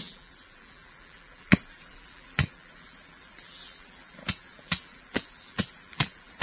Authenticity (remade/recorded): remade